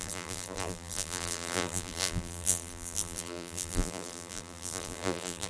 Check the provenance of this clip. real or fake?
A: fake